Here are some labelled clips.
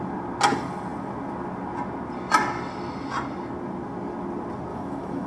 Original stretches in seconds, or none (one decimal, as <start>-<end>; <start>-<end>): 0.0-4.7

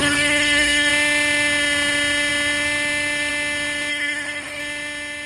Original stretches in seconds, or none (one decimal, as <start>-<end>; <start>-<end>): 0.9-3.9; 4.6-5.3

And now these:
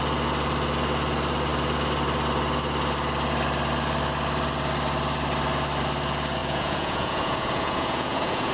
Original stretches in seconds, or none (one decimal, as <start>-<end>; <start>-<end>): 0.0-6.4

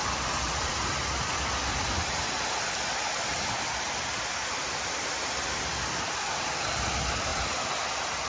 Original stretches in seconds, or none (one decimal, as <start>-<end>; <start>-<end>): 0.0-8.3